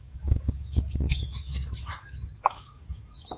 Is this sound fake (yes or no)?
yes